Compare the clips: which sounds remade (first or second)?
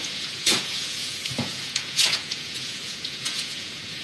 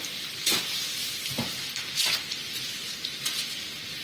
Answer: first